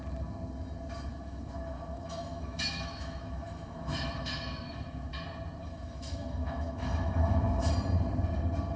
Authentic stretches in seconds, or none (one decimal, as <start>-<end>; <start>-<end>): 0.0-1.1; 5.1-5.6; 7.7-8.8